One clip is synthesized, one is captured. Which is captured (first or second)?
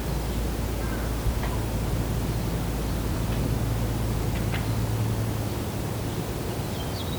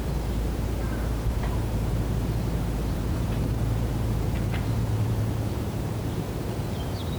first